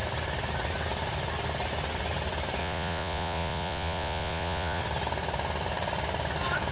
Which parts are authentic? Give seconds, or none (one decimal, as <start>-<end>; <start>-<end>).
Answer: 0.0-2.6; 4.8-6.7